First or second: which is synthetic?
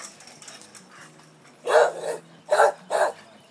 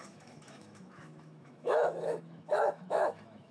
second